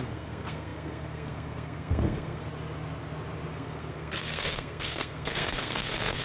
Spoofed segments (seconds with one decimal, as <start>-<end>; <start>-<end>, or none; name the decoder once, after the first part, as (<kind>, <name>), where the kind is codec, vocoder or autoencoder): 0.0-2.4 (codec, SNAC); 3.5-6.2

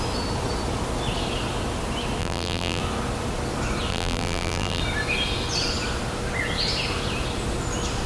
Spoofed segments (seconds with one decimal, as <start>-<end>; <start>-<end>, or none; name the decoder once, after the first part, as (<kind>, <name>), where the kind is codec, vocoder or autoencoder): 2.2-2.8 (vocoder, BigVGAN v2); 3.9-4.8

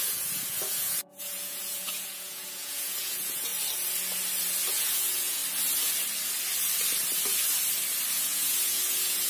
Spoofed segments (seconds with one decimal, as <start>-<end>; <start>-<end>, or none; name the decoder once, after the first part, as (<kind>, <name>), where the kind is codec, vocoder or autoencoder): 0.0-3.5 (vocoder, Vocos); 4.7-5.4; 8.1-9.3

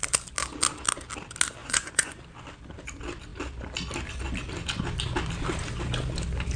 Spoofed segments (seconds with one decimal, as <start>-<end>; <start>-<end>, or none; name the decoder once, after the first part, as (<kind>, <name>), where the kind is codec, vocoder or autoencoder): 1.6-2.2 (vocoder, Vocos)